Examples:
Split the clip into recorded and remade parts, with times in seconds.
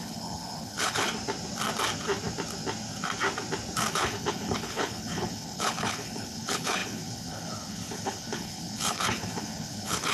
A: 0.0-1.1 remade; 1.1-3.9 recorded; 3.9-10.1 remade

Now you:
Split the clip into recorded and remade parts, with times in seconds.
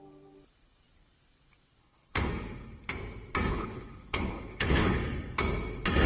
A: 0.0-1.8 recorded; 1.8-2.3 remade; 2.3-3.5 recorded; 3.5-5.0 remade; 5.0-6.1 recorded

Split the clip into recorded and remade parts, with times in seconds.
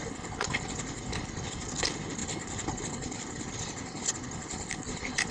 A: 0.0-5.3 remade